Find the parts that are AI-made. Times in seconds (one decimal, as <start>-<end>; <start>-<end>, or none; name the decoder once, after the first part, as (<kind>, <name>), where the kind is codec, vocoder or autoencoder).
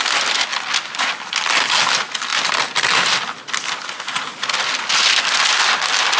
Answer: none